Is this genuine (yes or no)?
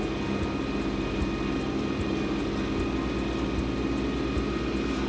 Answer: yes